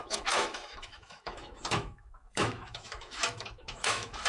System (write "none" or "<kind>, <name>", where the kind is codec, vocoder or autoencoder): autoencoder, DAC-VAE